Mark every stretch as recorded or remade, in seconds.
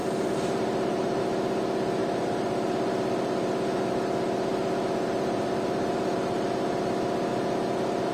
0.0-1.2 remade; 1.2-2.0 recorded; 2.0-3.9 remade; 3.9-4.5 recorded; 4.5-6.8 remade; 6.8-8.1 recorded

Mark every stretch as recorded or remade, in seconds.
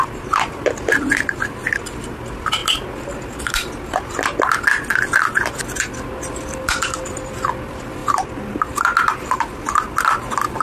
0.0-2.6 remade; 2.6-6.4 recorded; 6.4-8.0 remade; 8.0-9.9 recorded; 9.9-10.6 remade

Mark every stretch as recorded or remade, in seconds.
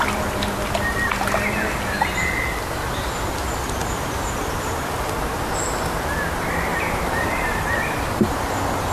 0.0-3.8 recorded; 3.8-4.8 remade; 4.8-6.7 recorded; 6.7-7.6 remade; 7.6-8.9 recorded